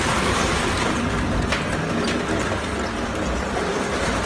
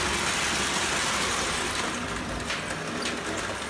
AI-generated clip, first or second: first